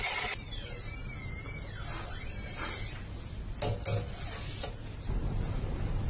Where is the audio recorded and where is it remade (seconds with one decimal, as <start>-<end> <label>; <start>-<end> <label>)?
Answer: 0.0-1.0 remade; 1.0-4.7 recorded; 4.7-6.1 remade